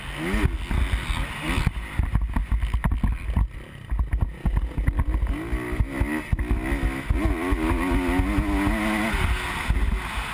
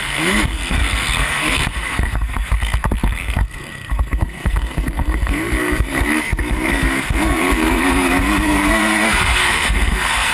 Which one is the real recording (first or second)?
first